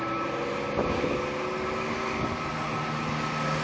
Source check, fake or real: real